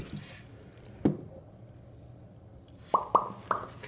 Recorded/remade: recorded